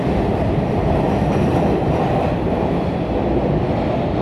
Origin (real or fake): real